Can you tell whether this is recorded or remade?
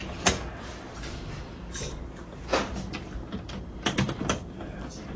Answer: recorded